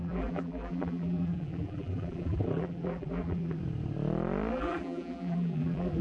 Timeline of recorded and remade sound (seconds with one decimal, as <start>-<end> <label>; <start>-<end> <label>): 0.0-3.6 remade; 3.6-4.5 recorded; 4.5-6.0 remade